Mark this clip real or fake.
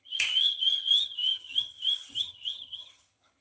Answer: fake